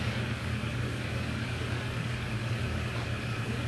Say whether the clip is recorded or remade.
remade